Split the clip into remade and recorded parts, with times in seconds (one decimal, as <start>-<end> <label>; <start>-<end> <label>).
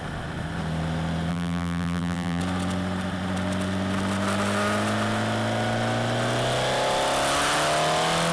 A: 0.0-1.3 recorded; 1.3-2.4 remade; 2.4-8.3 recorded